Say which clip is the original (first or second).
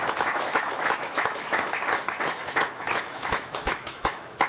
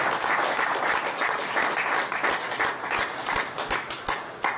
second